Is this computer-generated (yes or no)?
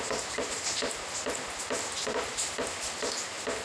no